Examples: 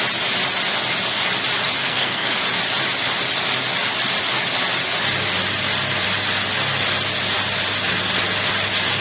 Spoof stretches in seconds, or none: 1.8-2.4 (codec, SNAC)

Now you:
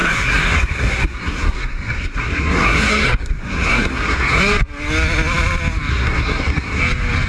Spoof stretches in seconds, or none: 0.0-4.4 (codec, SNAC); 5.9-6.8

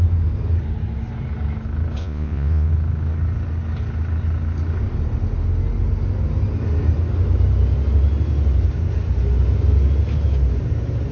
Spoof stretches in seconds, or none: 2.0-2.7 (vocoder, Vocos)

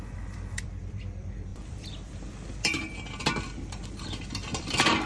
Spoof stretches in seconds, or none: 0.0-5.1 (vocoder, BigVGAN v2)

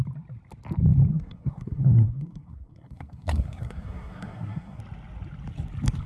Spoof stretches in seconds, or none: 1.1-4.8 (codec, SNAC)

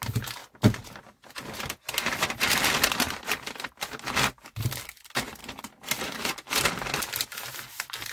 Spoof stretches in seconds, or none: 5.4-7.0 (vocoder, BigVGAN v2)